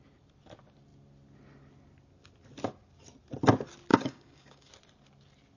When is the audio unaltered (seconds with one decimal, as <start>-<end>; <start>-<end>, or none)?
0.0-3.9; 4.7-5.6